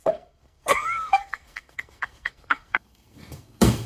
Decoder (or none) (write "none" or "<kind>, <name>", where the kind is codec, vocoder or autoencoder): codec, SNAC